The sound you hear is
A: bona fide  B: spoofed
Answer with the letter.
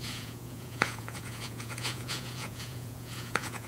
B